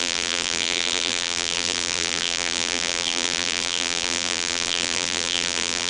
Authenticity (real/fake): fake